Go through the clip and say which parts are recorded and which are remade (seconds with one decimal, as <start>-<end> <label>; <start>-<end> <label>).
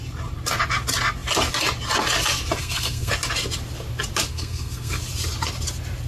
0.0-2.6 recorded; 2.6-3.1 remade; 3.1-4.3 recorded; 4.3-5.0 remade; 5.0-6.1 recorded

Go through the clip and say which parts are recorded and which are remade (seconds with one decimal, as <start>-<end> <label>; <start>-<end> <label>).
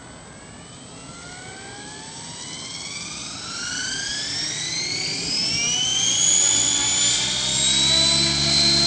0.0-5.9 recorded; 5.9-6.8 remade; 6.8-8.9 recorded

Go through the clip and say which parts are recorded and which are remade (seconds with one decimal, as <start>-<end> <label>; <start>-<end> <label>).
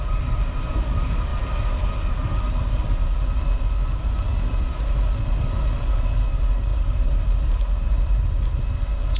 0.0-1.3 recorded; 1.3-1.9 remade; 1.9-6.7 recorded; 6.7-8.6 remade; 8.6-9.2 recorded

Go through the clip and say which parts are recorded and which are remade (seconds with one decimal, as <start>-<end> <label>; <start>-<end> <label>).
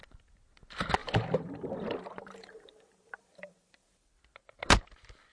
0.0-1.0 recorded; 1.0-4.2 remade; 4.2-5.3 recorded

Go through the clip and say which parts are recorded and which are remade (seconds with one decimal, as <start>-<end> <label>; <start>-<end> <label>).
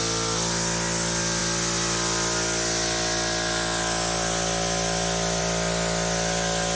0.0-6.7 recorded